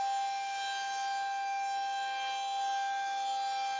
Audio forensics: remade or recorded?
recorded